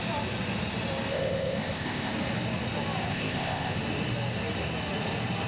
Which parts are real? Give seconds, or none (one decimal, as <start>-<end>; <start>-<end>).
0.0-1.1; 2.1-3.1; 3.8-5.5